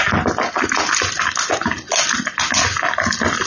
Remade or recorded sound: recorded